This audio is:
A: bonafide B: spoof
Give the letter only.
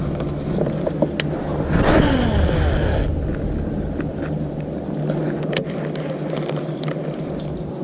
A